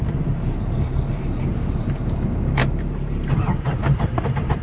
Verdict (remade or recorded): remade